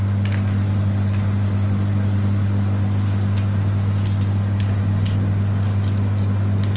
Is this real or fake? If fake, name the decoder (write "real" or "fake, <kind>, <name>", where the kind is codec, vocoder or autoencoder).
real